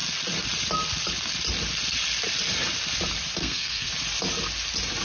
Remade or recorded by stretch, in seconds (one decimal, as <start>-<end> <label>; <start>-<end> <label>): 0.0-3.4 recorded; 3.4-3.9 remade; 3.9-5.0 recorded